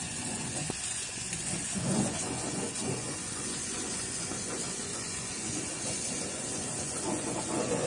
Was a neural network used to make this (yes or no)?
yes